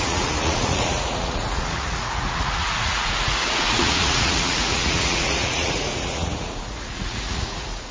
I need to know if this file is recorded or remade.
remade